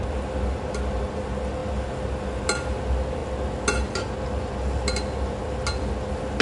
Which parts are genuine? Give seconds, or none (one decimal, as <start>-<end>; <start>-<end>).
0.0-6.4